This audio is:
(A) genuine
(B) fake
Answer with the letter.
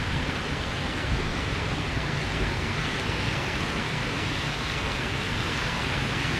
B